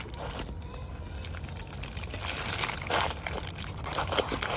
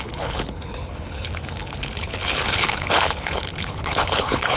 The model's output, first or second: second